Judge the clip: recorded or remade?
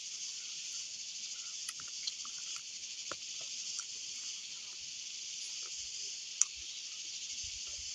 recorded